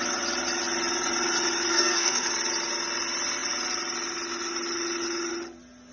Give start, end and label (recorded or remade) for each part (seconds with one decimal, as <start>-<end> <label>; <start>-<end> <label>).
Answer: 0.0-1.7 recorded; 1.7-2.3 remade; 2.3-5.9 recorded